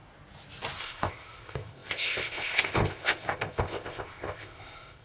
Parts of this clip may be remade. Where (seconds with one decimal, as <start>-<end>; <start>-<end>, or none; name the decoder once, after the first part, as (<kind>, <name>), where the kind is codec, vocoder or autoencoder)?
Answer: 0.8-5.0 (codec, ZipCodec)